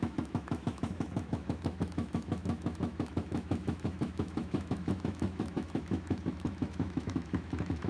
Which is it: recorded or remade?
remade